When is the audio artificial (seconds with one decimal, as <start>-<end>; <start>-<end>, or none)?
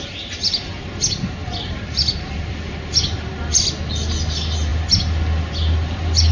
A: none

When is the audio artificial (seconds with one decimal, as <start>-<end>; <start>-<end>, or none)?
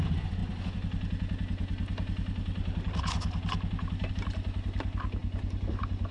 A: none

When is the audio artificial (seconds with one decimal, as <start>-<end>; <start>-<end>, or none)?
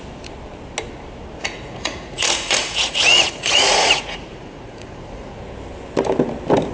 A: 1.4-5.4